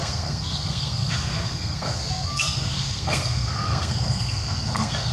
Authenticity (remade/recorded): remade